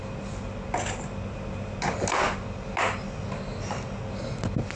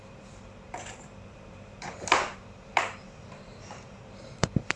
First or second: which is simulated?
second